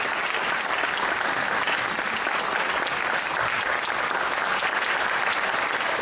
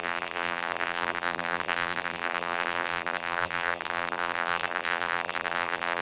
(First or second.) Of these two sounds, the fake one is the second